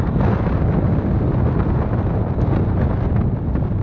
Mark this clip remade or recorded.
recorded